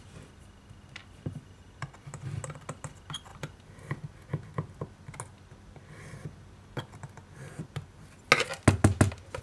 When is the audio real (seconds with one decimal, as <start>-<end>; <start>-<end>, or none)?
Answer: 0.0-9.4

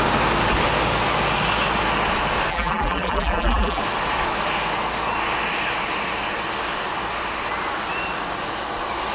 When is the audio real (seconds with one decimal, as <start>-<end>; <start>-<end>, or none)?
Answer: 0.0-2.5; 3.8-9.1

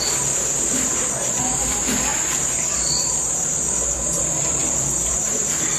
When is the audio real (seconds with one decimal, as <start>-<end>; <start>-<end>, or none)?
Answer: 2.1-2.7

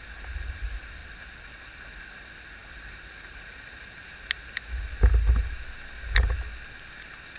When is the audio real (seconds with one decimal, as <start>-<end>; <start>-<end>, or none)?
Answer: 0.0-7.4

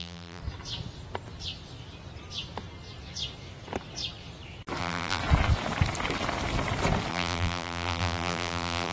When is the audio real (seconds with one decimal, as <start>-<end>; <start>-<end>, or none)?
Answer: 0.4-4.8; 5.2-7.1

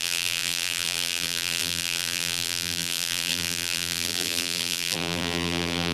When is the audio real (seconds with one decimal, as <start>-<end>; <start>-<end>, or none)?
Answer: none

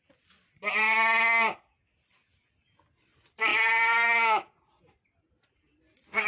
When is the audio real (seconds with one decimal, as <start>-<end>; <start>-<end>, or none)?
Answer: 0.0-6.3

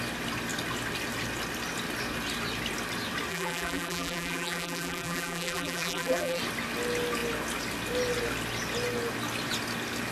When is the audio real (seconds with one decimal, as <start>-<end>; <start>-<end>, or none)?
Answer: 0.0-3.3; 6.4-10.1